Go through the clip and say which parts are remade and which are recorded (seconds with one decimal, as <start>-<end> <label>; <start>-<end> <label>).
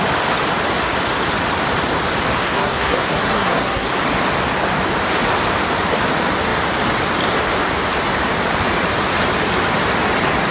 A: 0.0-2.4 recorded; 2.4-3.9 remade; 3.9-10.5 recorded